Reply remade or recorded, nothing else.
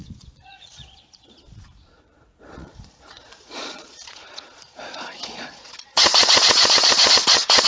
remade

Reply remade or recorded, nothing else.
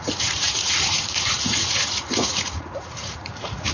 remade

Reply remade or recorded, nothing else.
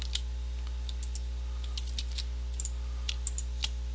recorded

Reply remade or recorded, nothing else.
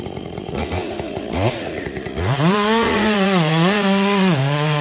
remade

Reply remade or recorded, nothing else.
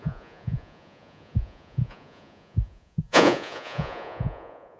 remade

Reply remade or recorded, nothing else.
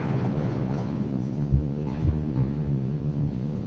remade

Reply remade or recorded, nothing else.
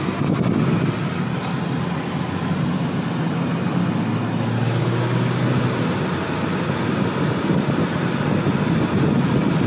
recorded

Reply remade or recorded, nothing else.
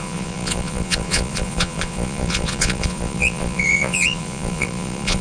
remade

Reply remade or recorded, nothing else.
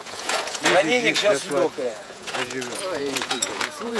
remade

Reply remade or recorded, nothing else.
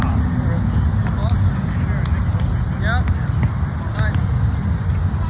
recorded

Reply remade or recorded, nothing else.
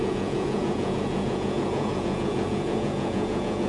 remade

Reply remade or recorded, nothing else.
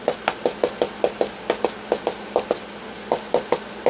recorded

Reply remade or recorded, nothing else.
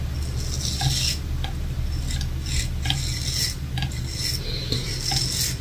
recorded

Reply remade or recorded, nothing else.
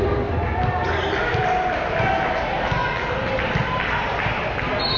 recorded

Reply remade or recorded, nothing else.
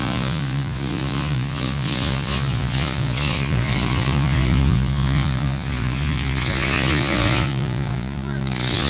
remade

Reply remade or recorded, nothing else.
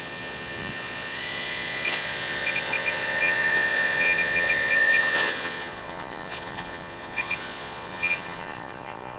remade